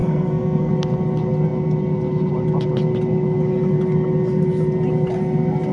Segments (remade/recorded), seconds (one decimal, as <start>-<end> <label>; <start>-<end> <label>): 0.0-0.7 remade; 0.7-5.7 recorded